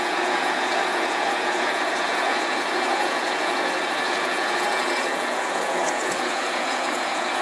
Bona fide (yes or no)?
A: no